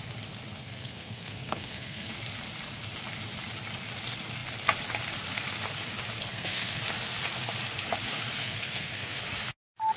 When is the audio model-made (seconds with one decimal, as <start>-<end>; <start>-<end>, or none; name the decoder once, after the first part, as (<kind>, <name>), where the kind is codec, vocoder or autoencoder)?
0.6-2.1 (codec, SNAC); 6.3-6.8; 8.4-9.2